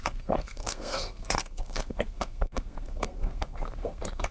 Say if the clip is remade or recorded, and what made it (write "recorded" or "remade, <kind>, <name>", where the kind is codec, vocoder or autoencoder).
remade, codec, SNAC